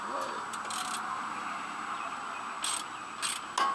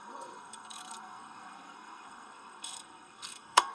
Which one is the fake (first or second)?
second